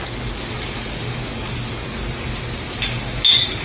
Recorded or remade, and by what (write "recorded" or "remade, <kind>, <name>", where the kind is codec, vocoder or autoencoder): recorded